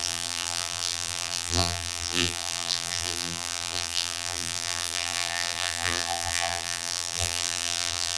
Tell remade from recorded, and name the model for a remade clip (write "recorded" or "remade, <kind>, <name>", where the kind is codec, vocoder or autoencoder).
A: remade, vocoder, BigVGAN v2